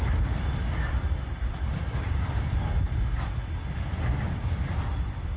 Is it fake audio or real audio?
real